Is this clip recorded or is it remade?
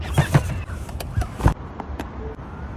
remade